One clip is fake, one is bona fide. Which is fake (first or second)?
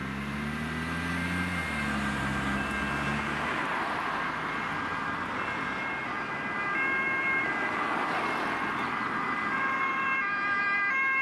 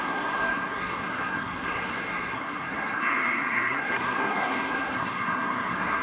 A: second